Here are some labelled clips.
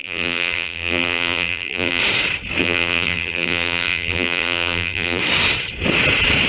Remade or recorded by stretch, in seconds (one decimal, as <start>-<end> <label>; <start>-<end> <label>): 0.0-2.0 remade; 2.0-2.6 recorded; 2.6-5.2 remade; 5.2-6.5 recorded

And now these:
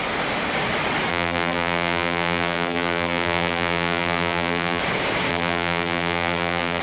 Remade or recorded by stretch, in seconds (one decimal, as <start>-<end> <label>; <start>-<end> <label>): 0.0-1.1 recorded; 1.1-4.8 remade; 4.8-5.3 recorded; 5.3-6.8 remade

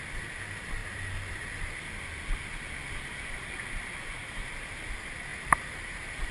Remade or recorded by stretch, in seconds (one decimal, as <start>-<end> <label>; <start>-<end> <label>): 0.0-5.3 recorded; 5.3-6.3 remade